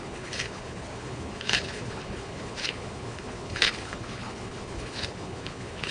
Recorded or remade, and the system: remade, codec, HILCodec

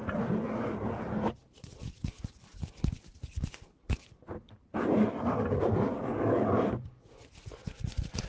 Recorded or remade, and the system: recorded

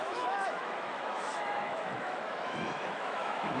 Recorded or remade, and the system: remade, autoencoder, DAC-VAE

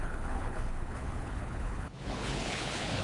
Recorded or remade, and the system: remade, codec, HILCodec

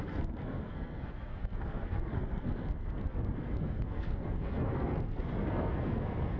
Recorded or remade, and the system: remade, codec, SNAC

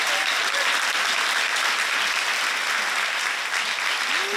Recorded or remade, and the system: recorded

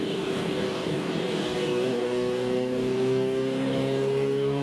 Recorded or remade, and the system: remade, codec, DAC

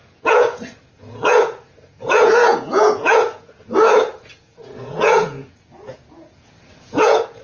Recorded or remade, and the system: remade, vocoder, Vocos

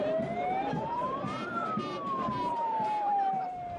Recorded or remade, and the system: remade, vocoder, BigVGAN v2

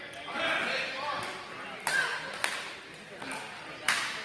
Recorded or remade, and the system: recorded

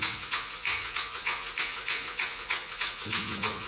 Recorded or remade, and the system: remade, vocoder, Vocos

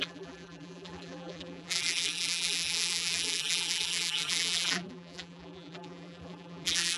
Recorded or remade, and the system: remade, vocoder, BigVGAN v2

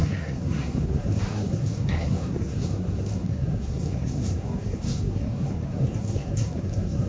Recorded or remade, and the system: remade, codec, SNAC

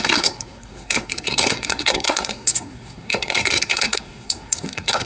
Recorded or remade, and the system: remade, codec, SNAC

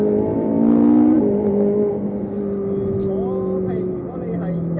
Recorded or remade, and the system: recorded